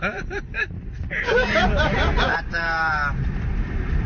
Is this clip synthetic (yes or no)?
yes